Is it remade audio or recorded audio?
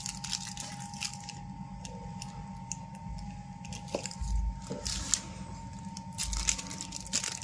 recorded